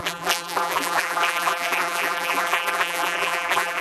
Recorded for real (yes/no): no